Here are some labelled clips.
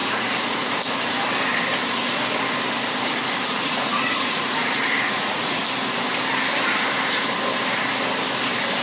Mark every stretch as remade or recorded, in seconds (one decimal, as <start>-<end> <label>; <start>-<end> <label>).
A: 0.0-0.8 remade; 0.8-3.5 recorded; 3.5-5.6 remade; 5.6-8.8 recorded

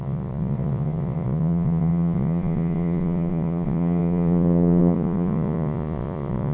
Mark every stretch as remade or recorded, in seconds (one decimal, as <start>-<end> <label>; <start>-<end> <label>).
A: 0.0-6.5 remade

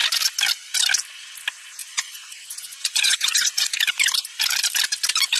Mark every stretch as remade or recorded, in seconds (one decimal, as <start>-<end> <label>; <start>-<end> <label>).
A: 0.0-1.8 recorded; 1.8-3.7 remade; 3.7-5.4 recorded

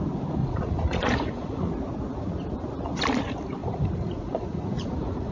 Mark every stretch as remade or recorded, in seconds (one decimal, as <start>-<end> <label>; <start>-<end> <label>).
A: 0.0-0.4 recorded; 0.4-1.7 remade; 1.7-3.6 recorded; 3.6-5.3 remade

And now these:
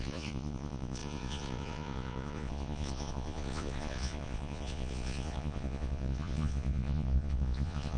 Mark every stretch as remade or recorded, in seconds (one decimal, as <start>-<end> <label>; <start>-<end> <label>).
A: 0.0-8.0 remade

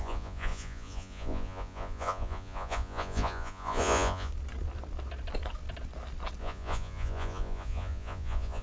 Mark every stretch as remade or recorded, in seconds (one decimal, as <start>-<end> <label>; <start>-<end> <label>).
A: 0.0-4.3 remade; 4.3-6.4 recorded; 6.4-8.6 remade